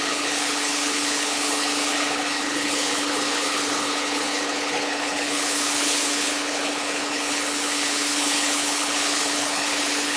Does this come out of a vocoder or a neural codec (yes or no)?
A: yes